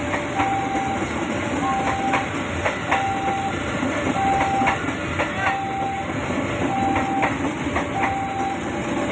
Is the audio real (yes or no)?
yes